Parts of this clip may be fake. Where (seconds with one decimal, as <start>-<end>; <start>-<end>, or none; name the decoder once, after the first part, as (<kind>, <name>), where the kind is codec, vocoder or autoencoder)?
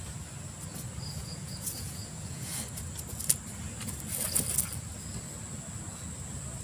1.2-2.5 (vocoder, Vocos)